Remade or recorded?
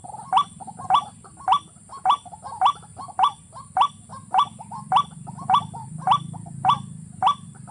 recorded